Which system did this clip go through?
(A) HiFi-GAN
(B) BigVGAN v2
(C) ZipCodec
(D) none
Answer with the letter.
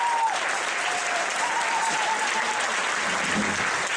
D